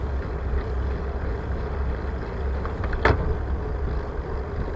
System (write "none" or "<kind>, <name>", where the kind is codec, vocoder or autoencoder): none